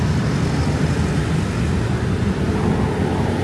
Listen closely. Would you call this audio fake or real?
real